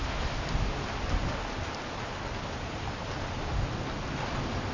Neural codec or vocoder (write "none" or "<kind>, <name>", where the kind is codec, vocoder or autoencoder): none